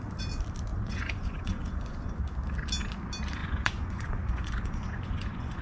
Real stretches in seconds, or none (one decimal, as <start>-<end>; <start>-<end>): 0.0-0.7; 2.2-3.4